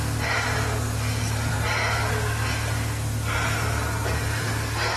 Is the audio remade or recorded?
recorded